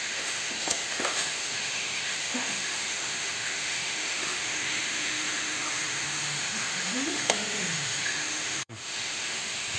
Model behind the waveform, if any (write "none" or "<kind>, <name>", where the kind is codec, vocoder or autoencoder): autoencoder, DAC-VAE